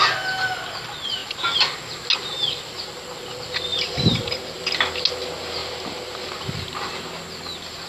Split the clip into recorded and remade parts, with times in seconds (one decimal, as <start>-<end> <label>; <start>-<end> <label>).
0.0-3.7 recorded; 3.7-4.6 remade; 4.6-7.9 recorded